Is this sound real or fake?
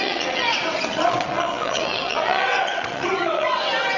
fake